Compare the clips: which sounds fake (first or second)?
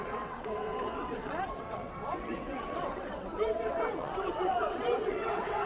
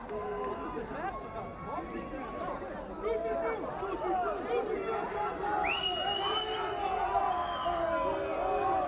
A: first